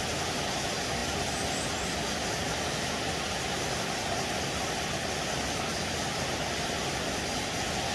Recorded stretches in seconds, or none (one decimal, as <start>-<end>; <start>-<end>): 0.0-7.9